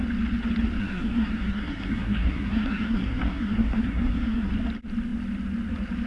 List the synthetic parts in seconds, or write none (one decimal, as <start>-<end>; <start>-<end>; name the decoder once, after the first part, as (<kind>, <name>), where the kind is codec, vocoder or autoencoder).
0.8-4.5 (codec, SNAC)